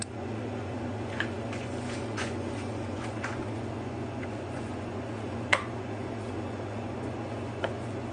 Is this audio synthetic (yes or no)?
yes